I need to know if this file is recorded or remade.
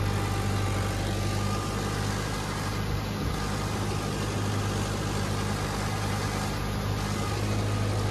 recorded